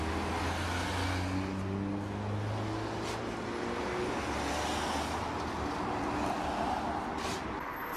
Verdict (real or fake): real